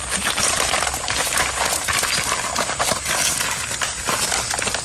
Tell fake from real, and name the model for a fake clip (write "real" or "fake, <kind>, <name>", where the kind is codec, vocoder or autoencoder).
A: real